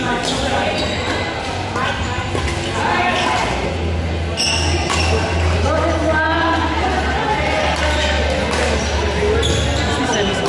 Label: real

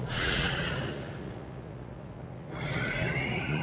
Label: fake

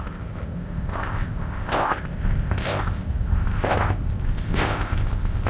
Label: fake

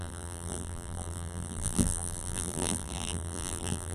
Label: fake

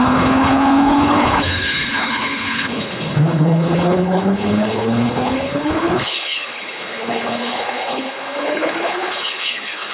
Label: fake